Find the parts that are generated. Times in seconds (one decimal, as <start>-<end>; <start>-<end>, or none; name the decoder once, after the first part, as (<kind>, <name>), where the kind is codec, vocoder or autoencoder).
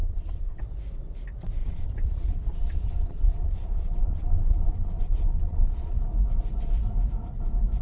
0.0-0.6 (vocoder, Vocos); 1.6-6.0